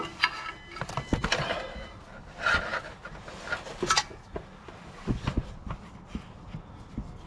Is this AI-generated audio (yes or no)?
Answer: no